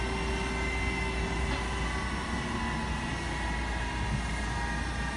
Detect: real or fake real